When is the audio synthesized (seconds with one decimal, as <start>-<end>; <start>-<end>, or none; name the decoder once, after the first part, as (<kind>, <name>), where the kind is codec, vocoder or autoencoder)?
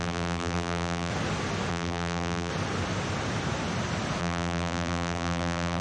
0.0-1.1 (vocoder, BigVGAN v2); 1.7-2.5; 4.2-5.8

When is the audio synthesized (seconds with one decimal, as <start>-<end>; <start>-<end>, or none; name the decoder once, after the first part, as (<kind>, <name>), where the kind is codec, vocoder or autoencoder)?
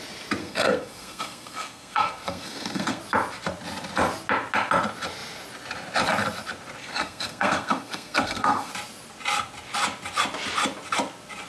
0.4-3.0 (codec, SNAC); 6.8-8.7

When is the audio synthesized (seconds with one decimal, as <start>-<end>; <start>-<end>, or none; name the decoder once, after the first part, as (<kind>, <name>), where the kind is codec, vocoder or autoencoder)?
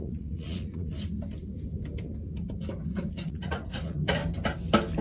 0.0-0.9 (vocoder, Vocos); 3.1-4.2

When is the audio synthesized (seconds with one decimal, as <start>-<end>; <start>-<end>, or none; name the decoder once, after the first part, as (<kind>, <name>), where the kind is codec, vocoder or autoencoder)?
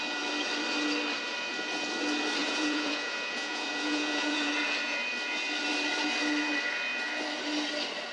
2.4-4.5 (vocoder, Vocos)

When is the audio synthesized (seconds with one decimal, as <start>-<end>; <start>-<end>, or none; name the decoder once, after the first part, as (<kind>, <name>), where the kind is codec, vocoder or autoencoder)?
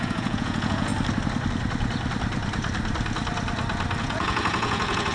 0.0-0.9 (vocoder, Vocos); 4.0-5.1